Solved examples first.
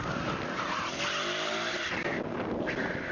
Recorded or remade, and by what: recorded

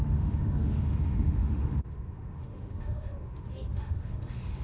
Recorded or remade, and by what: remade, autoencoder, DAC-VAE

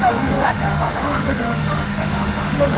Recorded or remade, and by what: remade, autoencoder, DAC-VAE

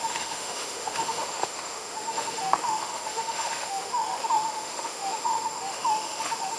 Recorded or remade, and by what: remade, autoencoder, DAC-VAE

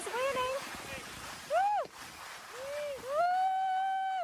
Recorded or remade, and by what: recorded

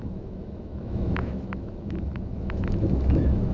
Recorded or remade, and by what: remade, autoencoder, DAC-VAE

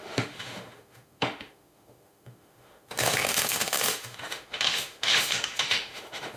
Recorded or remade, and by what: remade, autoencoder, DAC-VAE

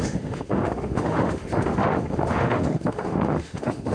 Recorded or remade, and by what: remade, autoencoder, DAC-VAE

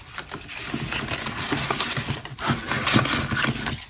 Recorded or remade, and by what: recorded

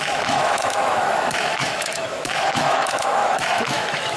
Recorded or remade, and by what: remade, autoencoder, DAC-VAE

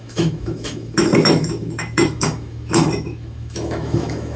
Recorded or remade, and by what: remade, autoencoder, DAC-VAE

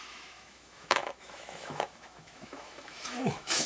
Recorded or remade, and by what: remade, autoencoder, DAC-VAE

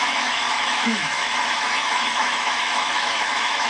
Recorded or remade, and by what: remade, autoencoder, DAC-VAE